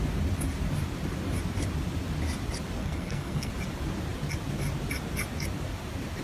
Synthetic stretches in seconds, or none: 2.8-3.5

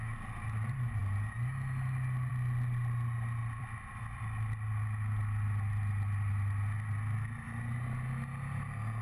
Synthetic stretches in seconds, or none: 3.4-4.0

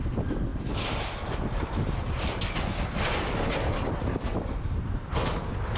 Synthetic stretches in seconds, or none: none